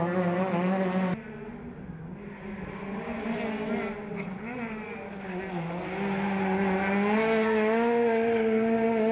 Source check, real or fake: real